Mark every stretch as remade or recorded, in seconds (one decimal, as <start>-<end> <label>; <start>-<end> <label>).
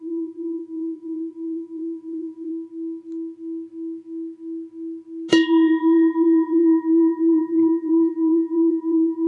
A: 0.0-2.5 remade; 2.5-5.3 recorded; 5.3-9.3 remade